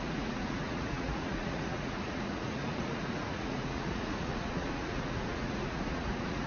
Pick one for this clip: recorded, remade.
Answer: remade